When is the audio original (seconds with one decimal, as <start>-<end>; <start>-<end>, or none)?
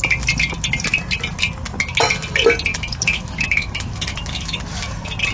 0.0-2.7; 4.6-5.3